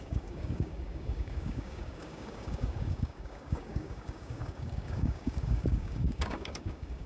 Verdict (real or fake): fake